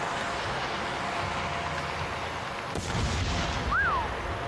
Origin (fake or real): real